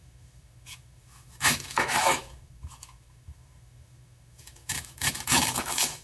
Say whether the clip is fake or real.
fake